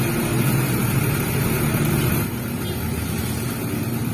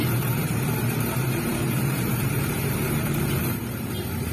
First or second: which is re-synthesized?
second